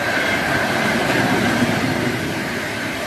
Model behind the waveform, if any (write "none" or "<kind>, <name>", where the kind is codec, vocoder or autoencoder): vocoder, BigVGAN v2